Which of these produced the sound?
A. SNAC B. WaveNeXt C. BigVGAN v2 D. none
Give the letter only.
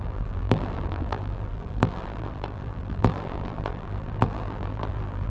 C